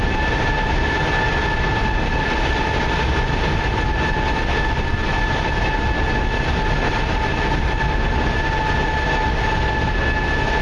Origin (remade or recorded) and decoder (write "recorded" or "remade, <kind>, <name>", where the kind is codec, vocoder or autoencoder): recorded